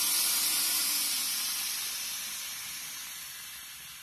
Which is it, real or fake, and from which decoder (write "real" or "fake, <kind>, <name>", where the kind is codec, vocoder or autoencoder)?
real